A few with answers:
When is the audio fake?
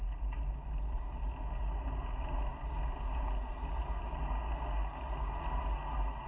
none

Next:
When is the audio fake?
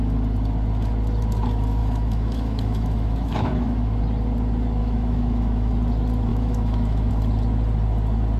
1.8-4.0 (autoencoder, DAC-VAE); 4.8-5.7; 6.3-7.1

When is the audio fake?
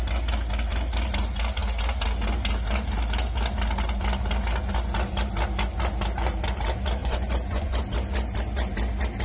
7.0-7.8 (vocoder, Vocos)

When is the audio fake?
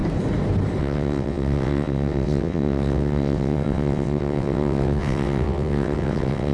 0.8-6.5 (vocoder, WaveNeXt)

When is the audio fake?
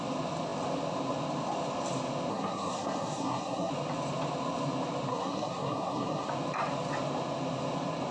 2.3-3.7 (codec, SNAC); 5.1-6.3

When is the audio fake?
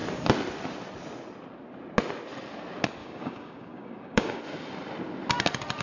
3.0-4.4 (codec, DAC)